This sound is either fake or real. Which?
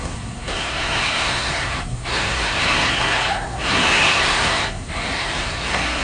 fake